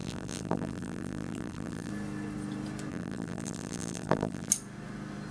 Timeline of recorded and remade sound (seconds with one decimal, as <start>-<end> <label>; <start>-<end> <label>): 0.0-1.9 remade; 1.9-2.9 recorded; 2.9-4.5 remade; 4.5-5.3 recorded

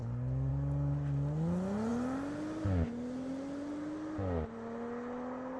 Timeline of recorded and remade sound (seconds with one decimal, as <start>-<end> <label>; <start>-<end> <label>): 0.0-5.6 recorded

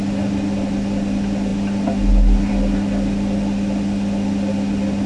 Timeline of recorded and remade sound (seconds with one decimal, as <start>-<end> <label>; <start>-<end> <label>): 0.0-5.1 recorded

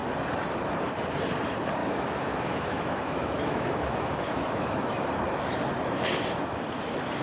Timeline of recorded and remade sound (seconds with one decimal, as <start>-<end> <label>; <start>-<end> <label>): 0.0-1.8 recorded; 1.8-5.1 remade; 5.1-7.2 recorded

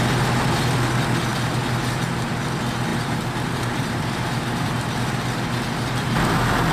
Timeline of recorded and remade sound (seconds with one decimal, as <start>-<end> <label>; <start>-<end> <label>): 0.0-2.9 recorded; 2.9-4.9 remade; 4.9-6.7 recorded

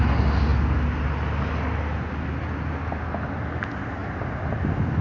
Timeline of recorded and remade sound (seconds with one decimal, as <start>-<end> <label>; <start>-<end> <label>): 0.0-5.0 recorded

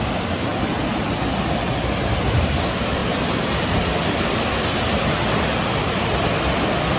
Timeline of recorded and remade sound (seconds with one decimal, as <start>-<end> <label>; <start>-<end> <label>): 0.0-7.0 recorded

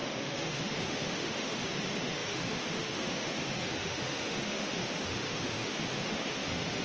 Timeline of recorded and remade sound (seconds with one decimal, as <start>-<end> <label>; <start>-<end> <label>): 0.0-6.8 remade